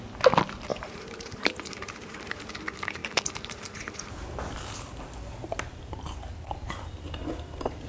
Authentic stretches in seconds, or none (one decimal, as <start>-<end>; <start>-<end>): 0.0-0.7; 2.4-7.9